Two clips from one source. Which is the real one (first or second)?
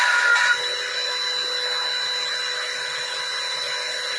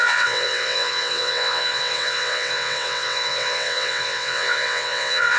first